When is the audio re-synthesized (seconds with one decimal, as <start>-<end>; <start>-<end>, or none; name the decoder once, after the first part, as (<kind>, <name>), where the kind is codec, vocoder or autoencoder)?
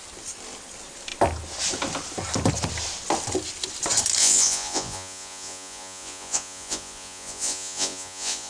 4.2-8.5 (vocoder, Vocos)